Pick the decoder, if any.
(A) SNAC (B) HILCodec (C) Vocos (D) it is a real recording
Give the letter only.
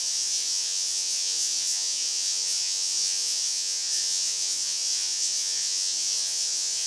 C